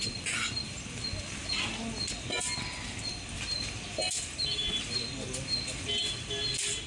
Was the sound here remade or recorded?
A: recorded